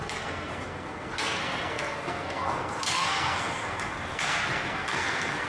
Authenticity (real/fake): fake